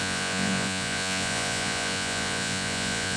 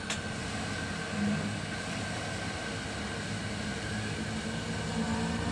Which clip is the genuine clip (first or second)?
second